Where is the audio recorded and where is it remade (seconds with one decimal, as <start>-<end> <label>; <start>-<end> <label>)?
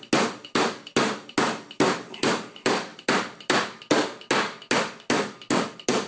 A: 0.0-6.1 recorded